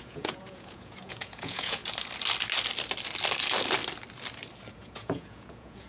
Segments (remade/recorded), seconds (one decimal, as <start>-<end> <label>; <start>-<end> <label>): 0.0-1.8 remade; 1.8-4.8 recorded; 4.8-5.9 remade